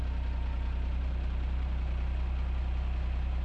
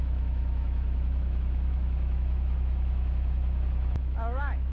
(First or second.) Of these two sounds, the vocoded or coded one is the second